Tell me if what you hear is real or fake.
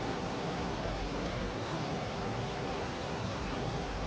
fake